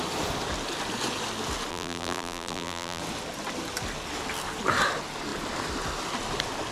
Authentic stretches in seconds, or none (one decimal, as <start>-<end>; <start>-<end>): 0.0-1.7; 3.0-6.7